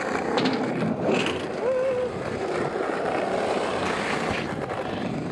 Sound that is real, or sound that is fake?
fake